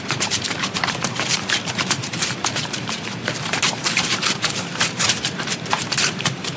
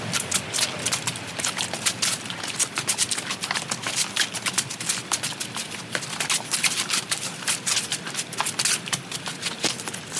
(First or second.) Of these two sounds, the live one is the second